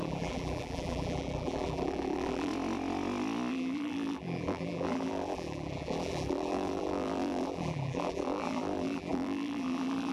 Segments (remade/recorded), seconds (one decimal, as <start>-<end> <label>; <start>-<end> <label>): 0.0-2.5 remade; 2.5-3.5 recorded; 3.5-10.1 remade